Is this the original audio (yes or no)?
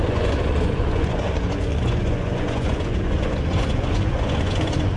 no